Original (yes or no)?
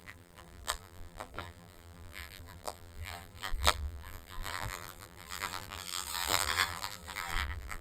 no